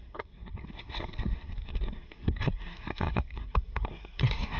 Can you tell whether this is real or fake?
fake